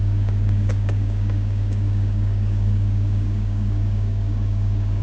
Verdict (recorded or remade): remade